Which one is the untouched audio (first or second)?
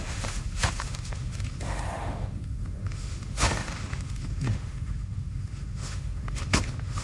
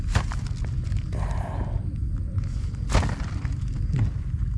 second